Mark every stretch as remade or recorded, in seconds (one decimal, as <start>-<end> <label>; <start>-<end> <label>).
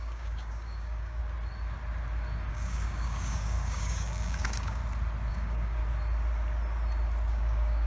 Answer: 0.0-1.2 remade; 1.2-2.5 recorded; 2.5-4.8 remade; 4.8-5.3 recorded; 5.3-5.8 remade; 5.8-7.3 recorded; 7.3-7.9 remade